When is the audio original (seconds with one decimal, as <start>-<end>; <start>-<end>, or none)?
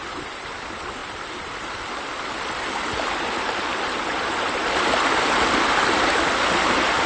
0.0-1.0; 4.9-7.1